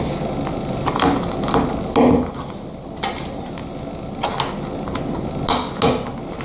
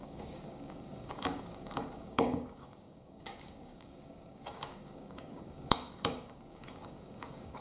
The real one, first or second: first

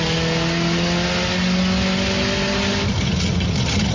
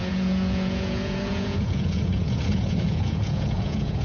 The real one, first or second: first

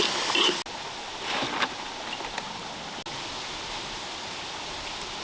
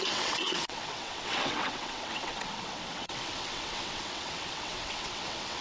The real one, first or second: first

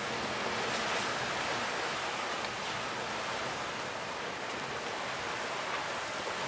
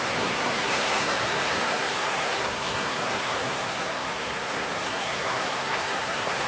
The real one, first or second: first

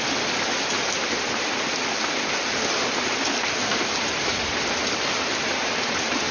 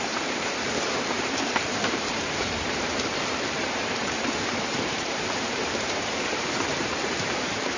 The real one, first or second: first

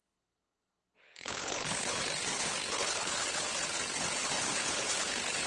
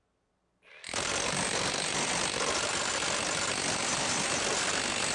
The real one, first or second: second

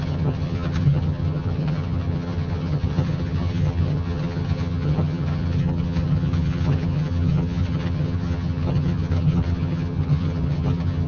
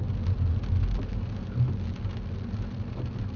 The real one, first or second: second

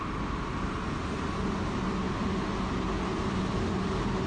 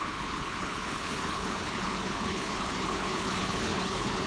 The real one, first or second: first